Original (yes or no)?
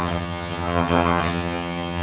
no